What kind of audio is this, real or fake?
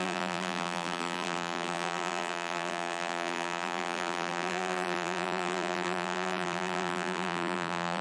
fake